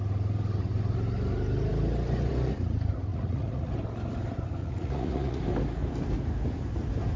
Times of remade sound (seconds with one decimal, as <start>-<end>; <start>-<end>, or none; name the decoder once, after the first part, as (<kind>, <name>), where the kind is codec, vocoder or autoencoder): 3.1-3.7 (vocoder, Vocos); 4.6-5.4